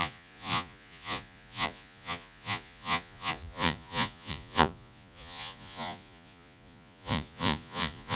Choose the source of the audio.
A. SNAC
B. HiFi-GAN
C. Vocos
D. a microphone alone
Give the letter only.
C